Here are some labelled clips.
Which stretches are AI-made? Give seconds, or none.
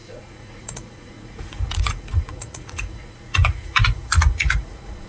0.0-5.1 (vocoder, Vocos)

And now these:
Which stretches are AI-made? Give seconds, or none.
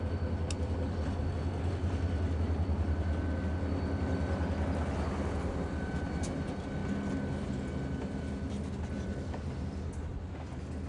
none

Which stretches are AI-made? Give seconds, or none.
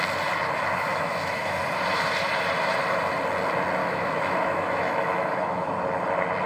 0.9-1.6 (autoencoder, DAC-VAE); 3.8-5.7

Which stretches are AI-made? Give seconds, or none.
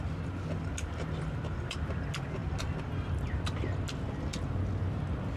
none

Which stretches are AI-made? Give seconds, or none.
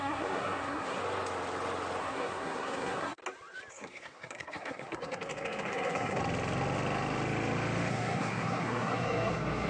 0.0-1.0 (codec, SNAC); 2.0-3.2; 3.7-6.2; 7.9-9.7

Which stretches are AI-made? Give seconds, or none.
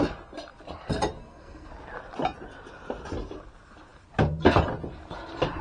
1.2-1.7 (codec, SNAC)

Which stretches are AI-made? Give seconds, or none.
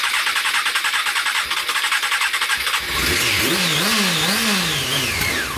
none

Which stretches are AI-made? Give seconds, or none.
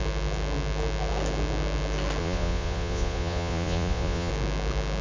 2.2-4.3 (vocoder, Vocos)